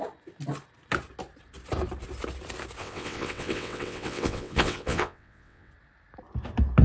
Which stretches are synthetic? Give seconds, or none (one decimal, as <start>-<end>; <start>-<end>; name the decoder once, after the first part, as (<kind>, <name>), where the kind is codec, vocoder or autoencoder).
2.8-5.7 (vocoder, WaveNeXt)